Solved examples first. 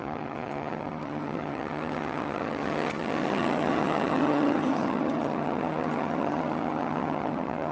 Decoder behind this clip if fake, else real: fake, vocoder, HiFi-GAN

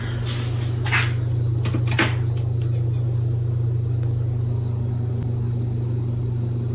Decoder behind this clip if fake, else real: real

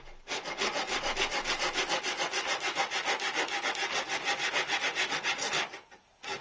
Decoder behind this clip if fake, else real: real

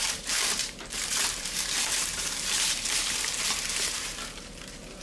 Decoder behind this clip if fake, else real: fake, vocoder, BigVGAN v2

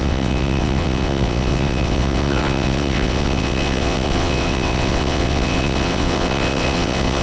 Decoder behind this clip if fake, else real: fake, vocoder, WaveNeXt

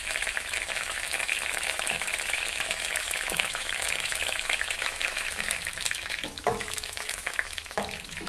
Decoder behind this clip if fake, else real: fake, autoencoder, DAC-VAE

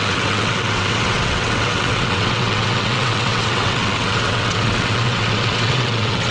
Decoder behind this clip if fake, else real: fake, vocoder, WaveNeXt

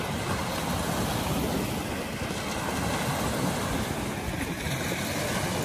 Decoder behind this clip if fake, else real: real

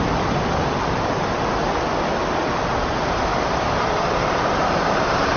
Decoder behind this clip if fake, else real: real